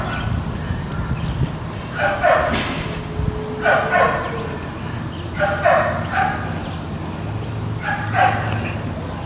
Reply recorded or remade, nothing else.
recorded